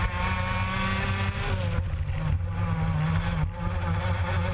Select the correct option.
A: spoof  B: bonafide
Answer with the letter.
B